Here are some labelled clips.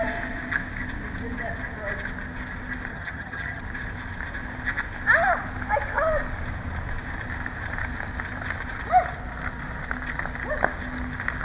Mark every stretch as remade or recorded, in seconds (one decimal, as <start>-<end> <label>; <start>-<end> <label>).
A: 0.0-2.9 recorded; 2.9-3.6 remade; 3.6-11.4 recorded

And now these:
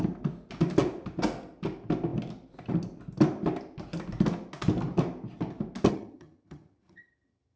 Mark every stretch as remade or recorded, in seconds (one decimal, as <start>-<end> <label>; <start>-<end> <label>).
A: 0.0-5.9 recorded; 5.9-7.6 remade

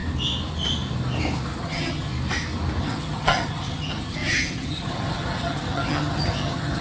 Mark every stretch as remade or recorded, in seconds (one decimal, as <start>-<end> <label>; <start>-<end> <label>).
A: 0.0-1.6 recorded; 1.6-2.1 remade; 2.1-2.8 recorded; 2.8-6.8 remade